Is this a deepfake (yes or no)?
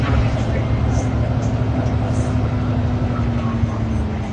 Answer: no